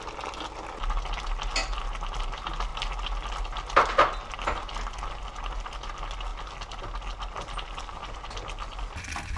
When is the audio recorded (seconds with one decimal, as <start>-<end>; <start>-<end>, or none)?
0.0-9.4